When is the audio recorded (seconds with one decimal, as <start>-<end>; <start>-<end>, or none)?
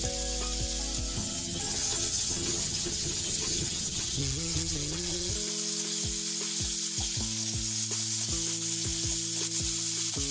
0.0-1.2; 5.3-10.3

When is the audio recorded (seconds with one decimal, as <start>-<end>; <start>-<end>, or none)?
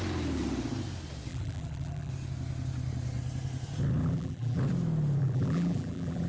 0.0-1.3; 2.1-4.0; 4.6-5.2